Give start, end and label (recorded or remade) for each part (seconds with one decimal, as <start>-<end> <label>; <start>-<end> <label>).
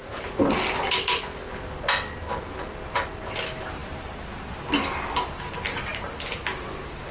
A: 0.0-7.1 recorded